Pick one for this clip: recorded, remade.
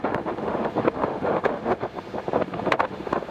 remade